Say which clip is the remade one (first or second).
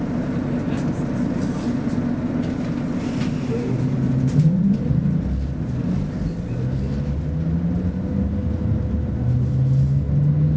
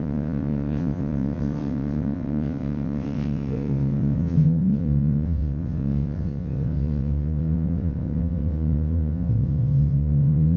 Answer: second